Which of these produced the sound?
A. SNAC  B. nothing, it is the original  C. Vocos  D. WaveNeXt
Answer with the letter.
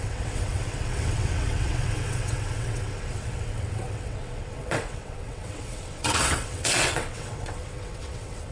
D